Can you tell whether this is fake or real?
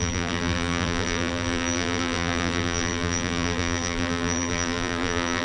fake